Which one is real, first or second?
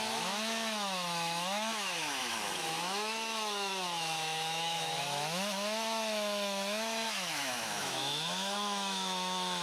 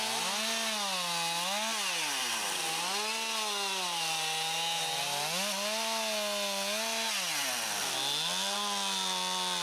second